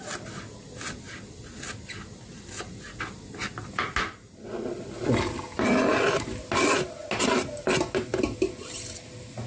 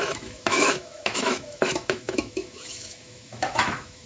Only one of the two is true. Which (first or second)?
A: first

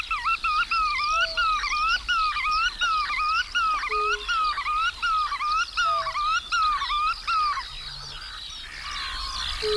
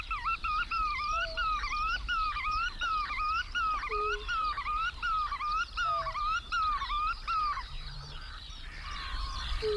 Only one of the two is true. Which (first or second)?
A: first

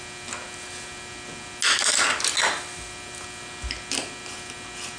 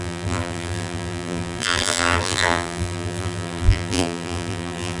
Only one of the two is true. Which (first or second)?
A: first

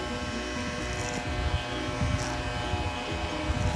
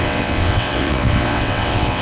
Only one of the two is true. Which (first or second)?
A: first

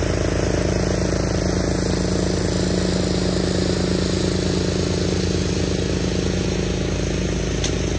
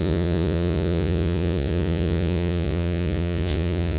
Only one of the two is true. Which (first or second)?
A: first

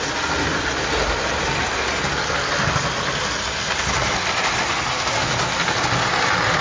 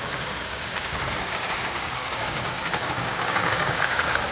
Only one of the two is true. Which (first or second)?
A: first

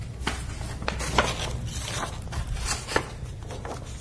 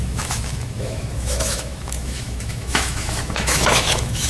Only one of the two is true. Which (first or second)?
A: first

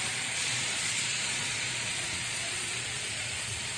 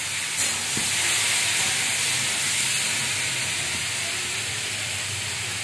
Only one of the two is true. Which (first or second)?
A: second